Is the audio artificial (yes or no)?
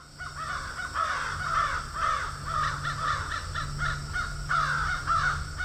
no